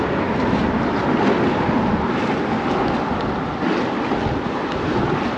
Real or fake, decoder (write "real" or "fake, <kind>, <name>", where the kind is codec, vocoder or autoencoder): real